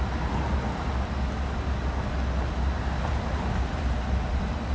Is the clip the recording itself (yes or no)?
yes